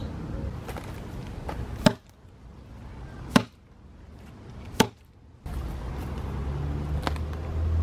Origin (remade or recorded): recorded